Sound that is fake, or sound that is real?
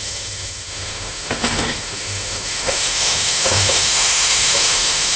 fake